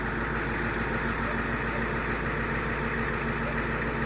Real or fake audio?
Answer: real